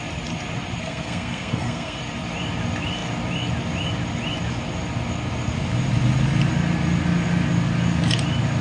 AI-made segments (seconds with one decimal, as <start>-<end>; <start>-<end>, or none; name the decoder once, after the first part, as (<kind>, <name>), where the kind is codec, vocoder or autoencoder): 0.8-2.0 (codec, SNAC)